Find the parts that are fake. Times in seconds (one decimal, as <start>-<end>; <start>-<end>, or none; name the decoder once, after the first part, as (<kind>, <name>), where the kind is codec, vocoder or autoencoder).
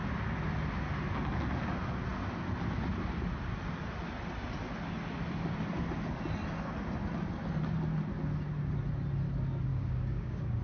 9.7-10.6 (codec, DAC)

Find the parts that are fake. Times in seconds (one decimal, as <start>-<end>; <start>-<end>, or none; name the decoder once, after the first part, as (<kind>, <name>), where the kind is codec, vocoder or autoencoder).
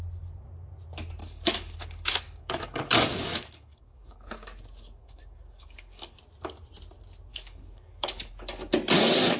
1.2-6.2 (codec, DAC); 7.3-8.3